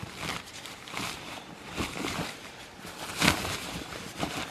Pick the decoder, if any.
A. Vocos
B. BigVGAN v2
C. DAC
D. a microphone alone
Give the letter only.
D